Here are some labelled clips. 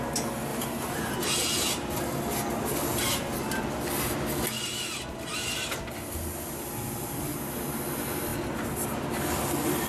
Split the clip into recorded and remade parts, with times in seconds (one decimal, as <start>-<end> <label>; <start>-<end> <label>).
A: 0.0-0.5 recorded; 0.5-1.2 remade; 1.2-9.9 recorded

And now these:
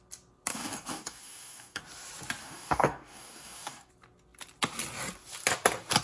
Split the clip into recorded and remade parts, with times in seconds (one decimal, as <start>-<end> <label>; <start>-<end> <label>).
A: 0.0-0.5 recorded; 0.5-1.8 remade; 1.8-2.4 recorded; 2.4-3.9 remade; 3.9-6.0 recorded

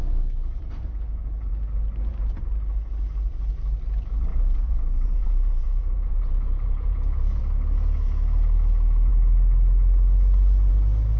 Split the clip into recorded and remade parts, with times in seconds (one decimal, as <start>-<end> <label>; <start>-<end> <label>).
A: 0.0-4.3 recorded; 4.3-7.4 remade; 7.4-11.2 recorded

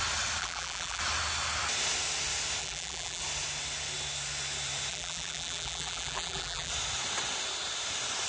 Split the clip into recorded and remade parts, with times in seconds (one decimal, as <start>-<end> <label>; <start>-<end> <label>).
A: 0.0-0.4 recorded; 0.4-1.0 remade; 1.0-2.6 recorded; 2.6-3.2 remade; 3.2-4.9 recorded; 4.9-6.7 remade; 6.7-8.3 recorded

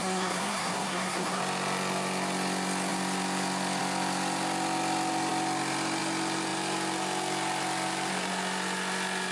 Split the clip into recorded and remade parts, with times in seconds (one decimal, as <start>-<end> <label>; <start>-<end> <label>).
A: 0.0-1.4 remade; 1.4-9.3 recorded